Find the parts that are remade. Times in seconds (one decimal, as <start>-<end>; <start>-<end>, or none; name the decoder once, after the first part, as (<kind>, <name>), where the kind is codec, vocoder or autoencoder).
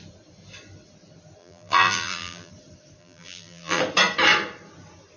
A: 1.4-2.5 (vocoder, BigVGAN v2); 3.0-3.8